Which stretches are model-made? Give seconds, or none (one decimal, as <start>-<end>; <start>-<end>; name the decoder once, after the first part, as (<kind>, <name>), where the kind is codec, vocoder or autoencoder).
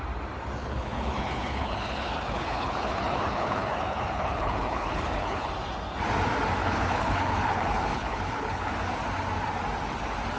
0.6-5.5 (codec, HILCodec); 6.6-8.7